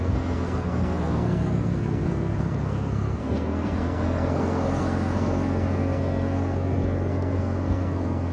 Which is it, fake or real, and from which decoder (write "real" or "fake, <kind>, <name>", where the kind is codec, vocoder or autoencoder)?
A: fake, codec, SNAC